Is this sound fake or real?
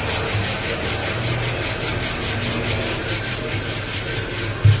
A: real